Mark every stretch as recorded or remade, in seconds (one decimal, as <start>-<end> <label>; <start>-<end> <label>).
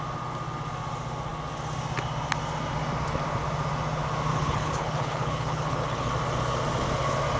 0.0-4.3 recorded; 4.3-6.1 remade; 6.1-7.4 recorded